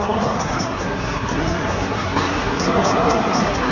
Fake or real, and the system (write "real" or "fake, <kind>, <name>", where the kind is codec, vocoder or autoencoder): fake, codec, SNAC